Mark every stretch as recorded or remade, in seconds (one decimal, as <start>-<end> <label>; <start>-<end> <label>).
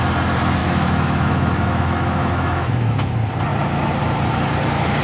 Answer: 0.0-0.6 recorded; 0.6-3.1 remade; 3.1-5.0 recorded